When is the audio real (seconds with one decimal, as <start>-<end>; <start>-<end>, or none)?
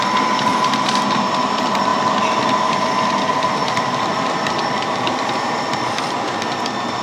0.5-1.3; 1.9-2.7